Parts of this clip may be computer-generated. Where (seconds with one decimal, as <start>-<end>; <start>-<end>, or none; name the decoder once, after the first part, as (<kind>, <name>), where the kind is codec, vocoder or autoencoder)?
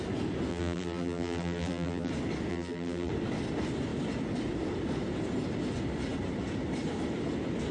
0.5-2.1 (vocoder, BigVGAN v2); 2.5-3.1